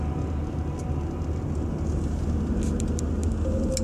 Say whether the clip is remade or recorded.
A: recorded